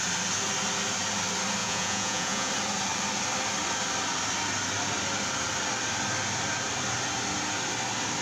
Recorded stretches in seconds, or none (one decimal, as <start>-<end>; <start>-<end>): 0.0-1.6; 2.5-8.2